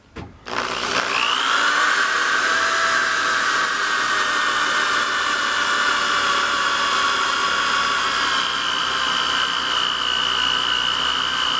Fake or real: real